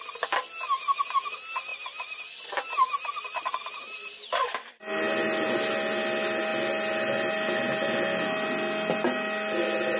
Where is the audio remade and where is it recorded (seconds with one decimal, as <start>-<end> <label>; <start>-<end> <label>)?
0.0-10.0 recorded